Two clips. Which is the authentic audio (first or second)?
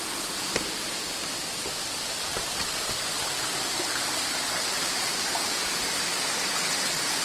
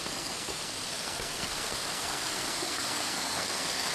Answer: first